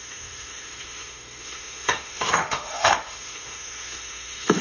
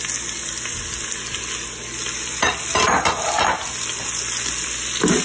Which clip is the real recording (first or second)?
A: second